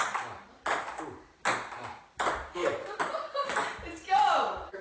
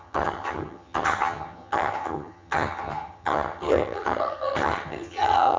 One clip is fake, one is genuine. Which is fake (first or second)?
second